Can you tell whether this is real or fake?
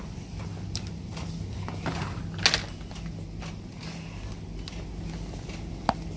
real